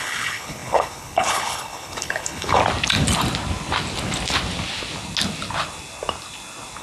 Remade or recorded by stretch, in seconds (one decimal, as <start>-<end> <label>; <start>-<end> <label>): 0.0-2.6 remade; 2.6-6.8 recorded